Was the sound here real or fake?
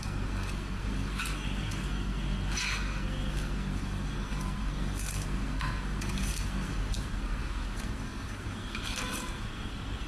fake